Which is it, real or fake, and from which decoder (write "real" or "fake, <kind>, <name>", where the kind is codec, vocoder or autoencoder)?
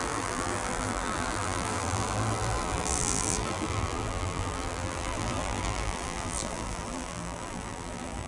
fake, vocoder, BigVGAN v2